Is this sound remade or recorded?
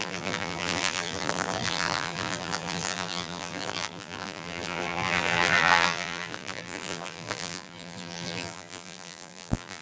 remade